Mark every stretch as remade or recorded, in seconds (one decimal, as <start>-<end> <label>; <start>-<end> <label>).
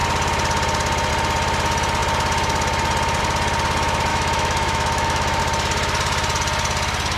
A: 0.0-4.1 recorded; 4.1-5.4 remade; 5.4-7.2 recorded